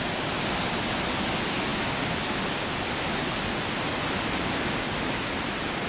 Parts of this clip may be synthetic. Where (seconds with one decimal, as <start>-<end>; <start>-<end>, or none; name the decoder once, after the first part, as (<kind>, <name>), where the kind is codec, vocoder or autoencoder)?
none